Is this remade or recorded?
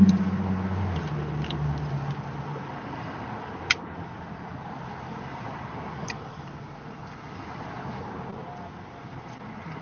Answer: recorded